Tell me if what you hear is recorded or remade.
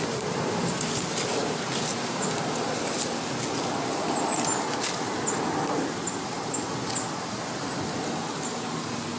recorded